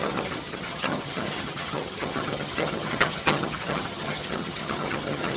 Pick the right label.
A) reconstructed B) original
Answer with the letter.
A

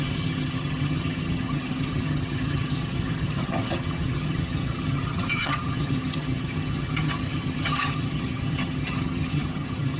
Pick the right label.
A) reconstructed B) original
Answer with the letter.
A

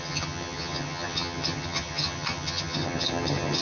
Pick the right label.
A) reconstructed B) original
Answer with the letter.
A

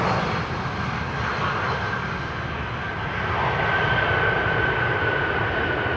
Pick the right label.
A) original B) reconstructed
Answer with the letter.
A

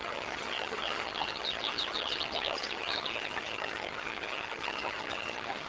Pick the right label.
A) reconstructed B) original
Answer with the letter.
A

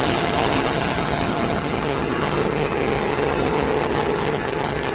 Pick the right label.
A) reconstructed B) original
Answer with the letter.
A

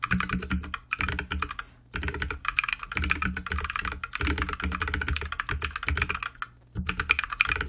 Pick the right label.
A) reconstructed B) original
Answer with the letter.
B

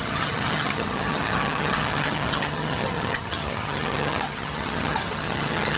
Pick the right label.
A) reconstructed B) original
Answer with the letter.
A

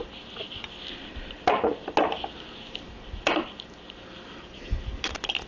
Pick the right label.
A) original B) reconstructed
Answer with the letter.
A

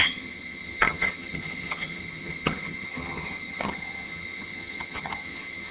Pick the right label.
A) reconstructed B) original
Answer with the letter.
A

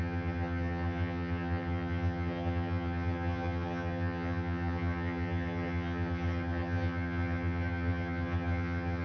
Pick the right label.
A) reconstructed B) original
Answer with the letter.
A